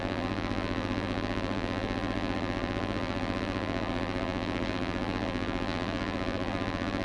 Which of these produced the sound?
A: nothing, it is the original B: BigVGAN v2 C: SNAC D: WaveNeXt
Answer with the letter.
B